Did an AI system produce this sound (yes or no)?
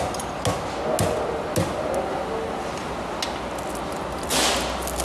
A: no